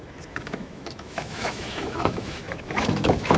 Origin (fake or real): fake